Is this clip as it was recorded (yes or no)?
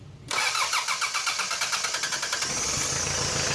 yes